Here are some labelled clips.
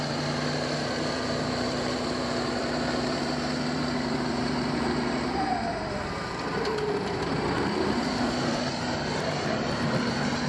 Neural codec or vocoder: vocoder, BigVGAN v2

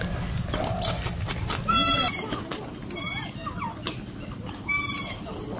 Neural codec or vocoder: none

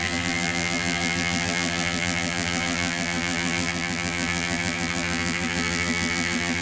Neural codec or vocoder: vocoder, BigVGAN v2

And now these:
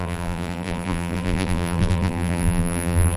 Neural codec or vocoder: vocoder, BigVGAN v2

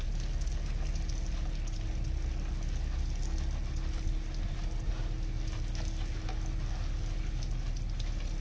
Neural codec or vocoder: none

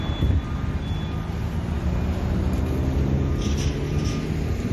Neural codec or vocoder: none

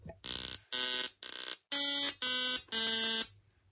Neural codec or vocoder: none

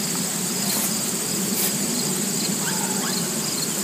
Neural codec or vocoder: vocoder, BigVGAN v2